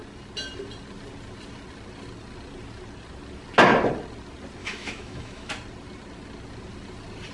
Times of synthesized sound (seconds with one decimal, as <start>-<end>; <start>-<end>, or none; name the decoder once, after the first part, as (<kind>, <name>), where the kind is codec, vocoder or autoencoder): 4.6-5.5 (autoencoder, DAC-VAE)